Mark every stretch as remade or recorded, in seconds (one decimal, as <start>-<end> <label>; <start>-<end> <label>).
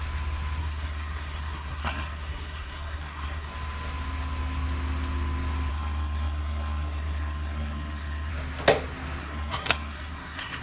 0.0-0.6 recorded; 0.6-3.5 remade; 3.5-5.7 recorded; 5.7-8.3 remade; 8.3-9.2 recorded; 9.2-10.6 remade